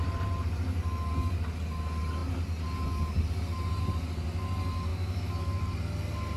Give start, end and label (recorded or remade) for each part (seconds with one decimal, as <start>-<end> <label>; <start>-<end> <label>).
0.0-4.9 recorded; 4.9-5.6 remade; 5.6-6.4 recorded